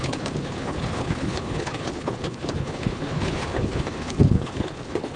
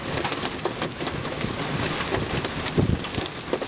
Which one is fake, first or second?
first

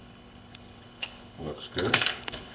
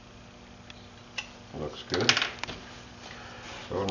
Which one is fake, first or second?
first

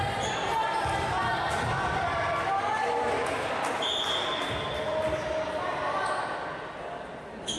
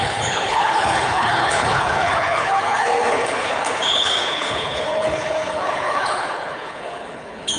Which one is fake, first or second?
second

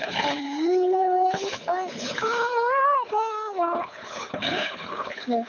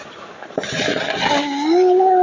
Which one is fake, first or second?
first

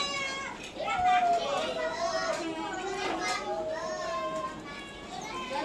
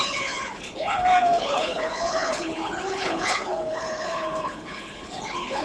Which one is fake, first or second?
second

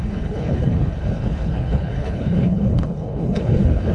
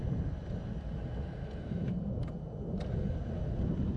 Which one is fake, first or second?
first